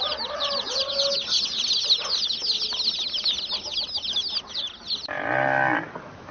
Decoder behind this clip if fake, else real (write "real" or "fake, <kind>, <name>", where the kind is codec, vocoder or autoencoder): real